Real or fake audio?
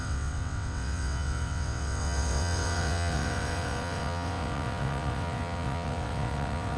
fake